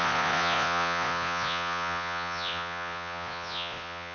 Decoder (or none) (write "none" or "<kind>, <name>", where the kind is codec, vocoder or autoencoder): vocoder, Vocos